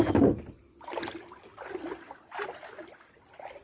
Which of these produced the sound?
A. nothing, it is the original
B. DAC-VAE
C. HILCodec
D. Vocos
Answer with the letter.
A